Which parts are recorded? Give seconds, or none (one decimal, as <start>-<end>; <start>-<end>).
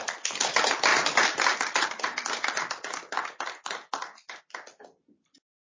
0.0-0.9; 4.4-5.8